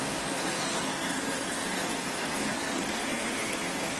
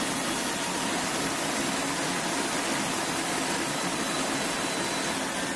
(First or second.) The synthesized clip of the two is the first